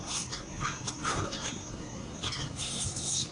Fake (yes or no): yes